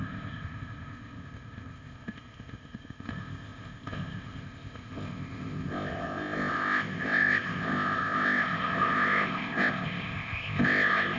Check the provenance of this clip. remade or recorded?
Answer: remade